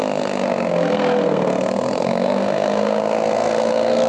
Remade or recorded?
remade